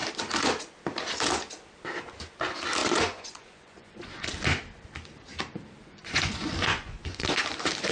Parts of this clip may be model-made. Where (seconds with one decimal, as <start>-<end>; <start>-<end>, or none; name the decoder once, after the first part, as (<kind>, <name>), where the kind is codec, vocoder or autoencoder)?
2.8-4.3 (vocoder, Vocos); 5.8-7.4